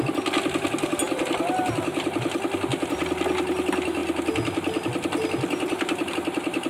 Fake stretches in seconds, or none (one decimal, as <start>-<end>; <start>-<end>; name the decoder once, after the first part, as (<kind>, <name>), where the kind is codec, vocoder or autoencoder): none